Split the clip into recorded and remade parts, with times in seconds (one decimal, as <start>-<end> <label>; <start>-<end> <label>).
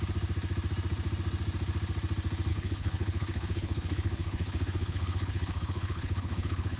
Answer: 0.0-2.5 recorded; 2.5-6.8 remade